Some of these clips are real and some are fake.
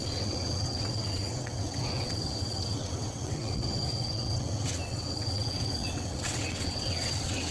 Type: fake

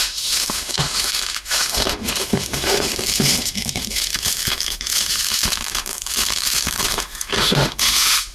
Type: fake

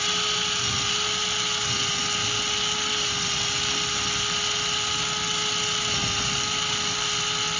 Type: real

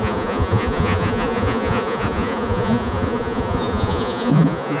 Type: fake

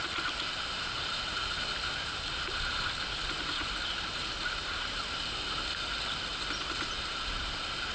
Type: real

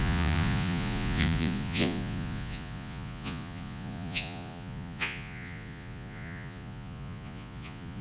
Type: fake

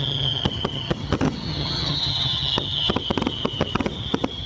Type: fake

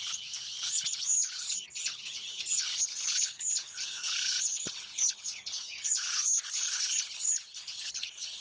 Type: fake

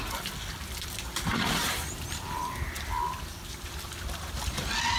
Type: real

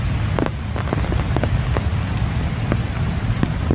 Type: real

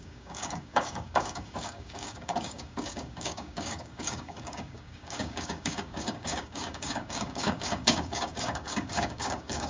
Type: fake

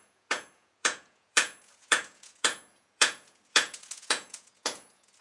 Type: fake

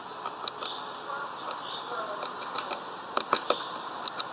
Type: real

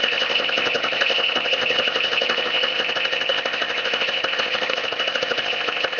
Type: fake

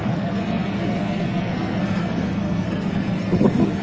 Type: fake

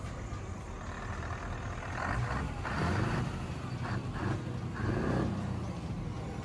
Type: real